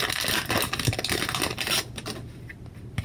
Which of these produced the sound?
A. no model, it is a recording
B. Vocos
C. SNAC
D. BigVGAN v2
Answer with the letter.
A